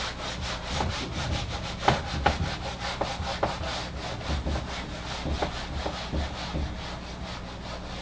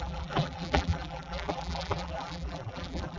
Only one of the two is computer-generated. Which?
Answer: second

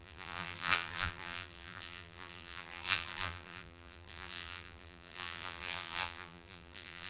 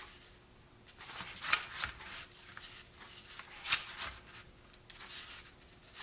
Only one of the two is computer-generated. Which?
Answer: first